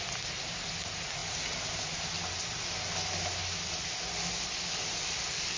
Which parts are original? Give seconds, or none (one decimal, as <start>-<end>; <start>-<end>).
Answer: 0.0-5.6

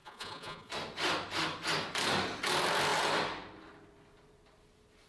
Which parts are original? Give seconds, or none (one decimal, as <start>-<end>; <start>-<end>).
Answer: 0.7-5.1

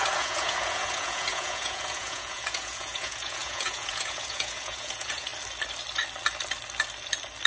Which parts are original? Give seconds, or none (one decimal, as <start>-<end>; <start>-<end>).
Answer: 5.3-7.5

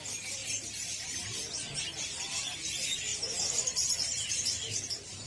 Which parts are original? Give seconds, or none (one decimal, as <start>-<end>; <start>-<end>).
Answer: 0.4-2.2

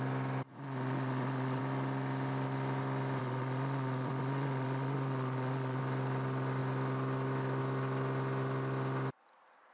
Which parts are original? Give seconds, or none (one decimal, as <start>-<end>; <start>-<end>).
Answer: 0.0-0.5; 1.6-3.2; 5.8-9.7

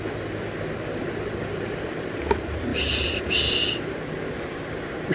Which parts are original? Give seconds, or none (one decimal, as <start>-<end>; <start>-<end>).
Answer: 0.0-5.1

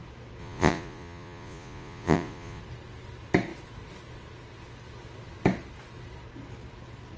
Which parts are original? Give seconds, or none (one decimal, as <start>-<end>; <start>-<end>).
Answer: 0.0-0.4; 2.6-7.2